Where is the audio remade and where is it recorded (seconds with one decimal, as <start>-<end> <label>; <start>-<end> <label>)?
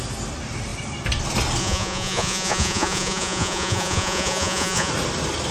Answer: 0.0-1.6 recorded; 1.6-4.9 remade; 4.9-5.5 recorded